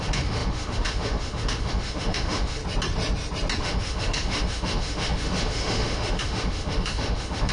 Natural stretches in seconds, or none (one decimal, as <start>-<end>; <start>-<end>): 2.6-3.6